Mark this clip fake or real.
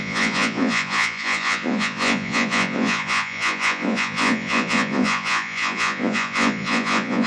fake